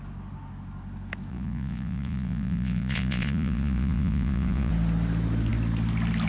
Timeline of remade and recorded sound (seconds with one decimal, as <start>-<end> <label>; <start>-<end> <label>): 0.0-1.3 recorded; 1.3-4.7 remade; 4.7-6.3 recorded